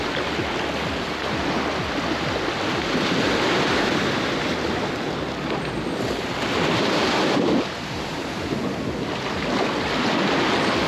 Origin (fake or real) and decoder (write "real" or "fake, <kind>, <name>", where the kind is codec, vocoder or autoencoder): real